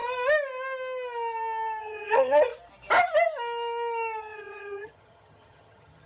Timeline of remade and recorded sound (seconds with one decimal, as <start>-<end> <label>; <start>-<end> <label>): 0.0-1.8 recorded; 1.8-2.5 remade; 2.5-4.2 recorded; 4.2-6.1 remade